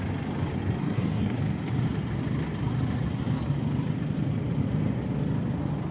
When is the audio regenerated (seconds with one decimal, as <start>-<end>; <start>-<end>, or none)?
0.8-1.4